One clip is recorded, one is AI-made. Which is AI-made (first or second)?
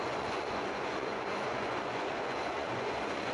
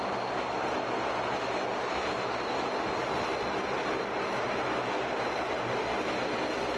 first